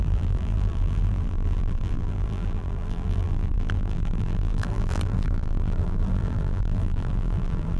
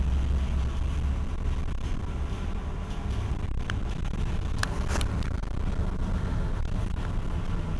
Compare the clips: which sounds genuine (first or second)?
second